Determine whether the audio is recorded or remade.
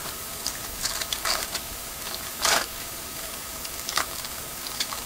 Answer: remade